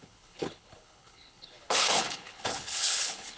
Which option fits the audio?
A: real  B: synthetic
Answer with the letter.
B